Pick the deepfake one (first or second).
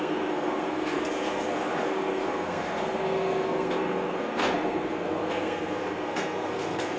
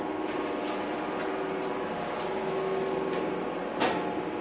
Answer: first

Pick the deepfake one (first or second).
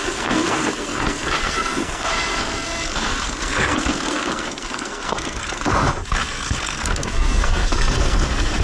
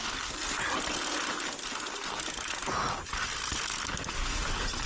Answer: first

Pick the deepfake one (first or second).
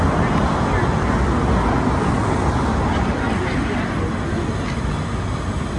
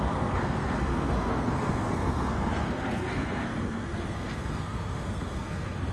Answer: second